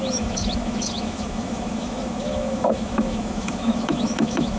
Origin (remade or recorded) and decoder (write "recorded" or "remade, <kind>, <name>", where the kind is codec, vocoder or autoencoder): remade, autoencoder, DAC-VAE